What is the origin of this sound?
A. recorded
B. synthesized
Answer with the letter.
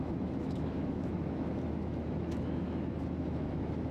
B